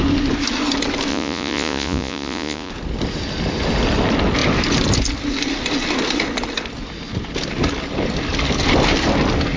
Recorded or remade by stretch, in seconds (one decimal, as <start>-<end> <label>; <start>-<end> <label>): 0.0-1.1 recorded; 1.1-2.7 remade; 2.7-9.6 recorded